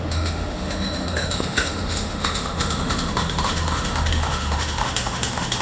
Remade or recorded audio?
remade